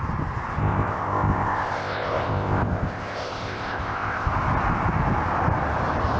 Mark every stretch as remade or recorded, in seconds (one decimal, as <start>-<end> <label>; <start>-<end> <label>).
0.0-0.6 recorded; 0.6-4.3 remade; 4.3-6.2 recorded